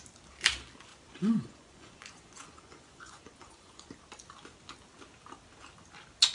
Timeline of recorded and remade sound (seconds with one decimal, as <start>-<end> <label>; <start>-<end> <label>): 0.0-0.9 recorded; 0.9-3.9 remade; 3.9-6.3 recorded